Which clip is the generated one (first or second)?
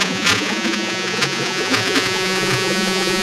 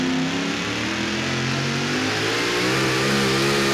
first